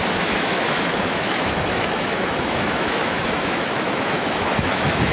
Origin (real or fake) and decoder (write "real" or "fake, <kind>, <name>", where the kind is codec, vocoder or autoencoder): fake, autoencoder, DAC-VAE